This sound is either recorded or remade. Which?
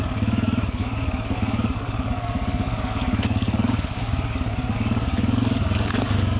remade